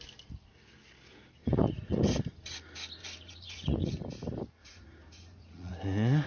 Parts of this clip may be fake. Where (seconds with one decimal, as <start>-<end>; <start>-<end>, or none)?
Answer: 1.4-2.0; 3.0-3.9; 4.6-5.7